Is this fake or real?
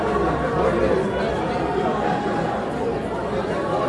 real